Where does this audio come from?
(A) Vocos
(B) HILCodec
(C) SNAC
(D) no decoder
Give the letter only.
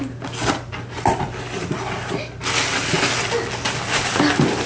D